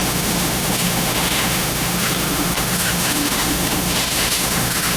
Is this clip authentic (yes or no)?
no